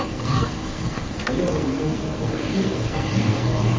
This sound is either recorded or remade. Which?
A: remade